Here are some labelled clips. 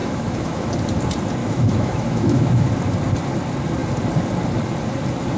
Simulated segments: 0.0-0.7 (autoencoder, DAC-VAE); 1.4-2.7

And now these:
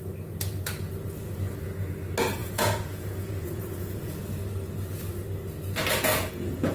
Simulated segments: 2.4-4.3 (vocoder, Vocos); 6.1-6.7

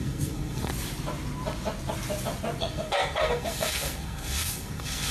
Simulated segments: 0.0-0.7 (codec, SNAC); 2.6-5.1